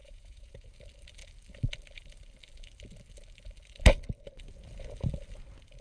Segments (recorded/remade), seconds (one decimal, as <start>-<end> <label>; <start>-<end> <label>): 0.0-0.7 remade; 0.7-5.8 recorded